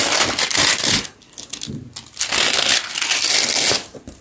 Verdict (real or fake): real